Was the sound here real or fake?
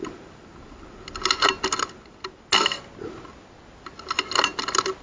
real